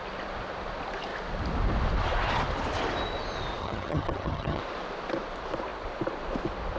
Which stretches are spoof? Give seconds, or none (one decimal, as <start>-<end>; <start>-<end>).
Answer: 3.6-4.6